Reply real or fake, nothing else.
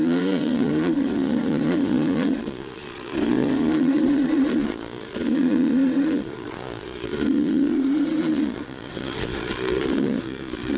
fake